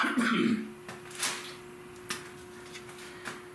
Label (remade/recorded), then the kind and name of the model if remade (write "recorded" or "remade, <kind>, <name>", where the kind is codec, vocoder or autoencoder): recorded